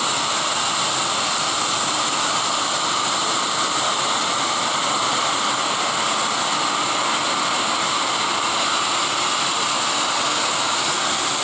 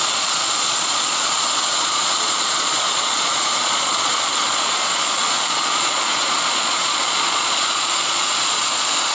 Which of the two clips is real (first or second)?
first